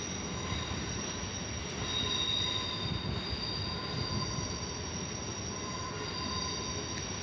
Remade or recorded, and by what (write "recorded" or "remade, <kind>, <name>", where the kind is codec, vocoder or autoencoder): recorded